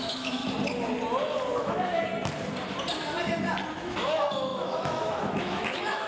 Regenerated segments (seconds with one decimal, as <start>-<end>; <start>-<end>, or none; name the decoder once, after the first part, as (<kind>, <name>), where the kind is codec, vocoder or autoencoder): 0.0-0.4 (autoencoder, DAC-VAE); 1.6-2.1; 3.8-6.1